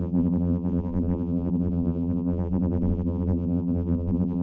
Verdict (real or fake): fake